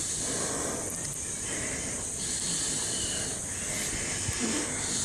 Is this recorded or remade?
recorded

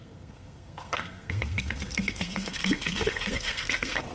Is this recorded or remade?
remade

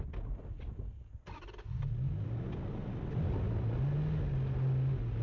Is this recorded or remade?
recorded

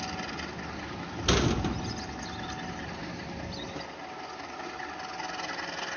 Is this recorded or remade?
recorded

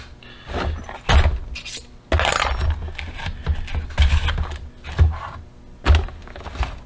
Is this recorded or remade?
recorded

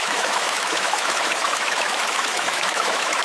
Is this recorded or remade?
remade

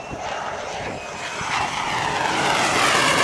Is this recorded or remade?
recorded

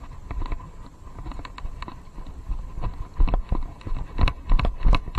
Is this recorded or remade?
recorded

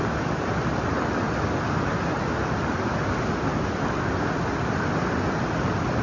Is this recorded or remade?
recorded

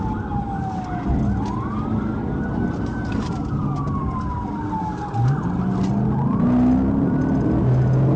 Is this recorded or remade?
recorded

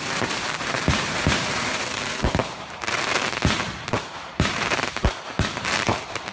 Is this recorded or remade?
remade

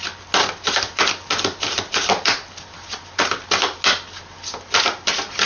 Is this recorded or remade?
recorded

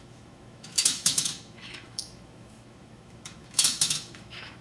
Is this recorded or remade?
remade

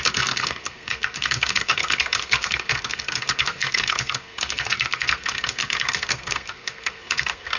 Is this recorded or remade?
remade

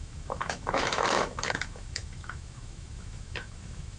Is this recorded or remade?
remade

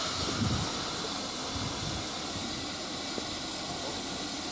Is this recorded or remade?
recorded